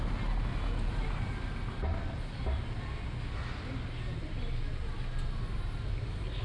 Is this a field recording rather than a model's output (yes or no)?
yes